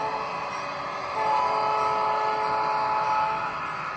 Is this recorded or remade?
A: recorded